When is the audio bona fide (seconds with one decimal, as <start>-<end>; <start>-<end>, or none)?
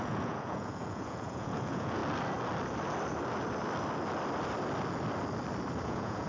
2.0-5.8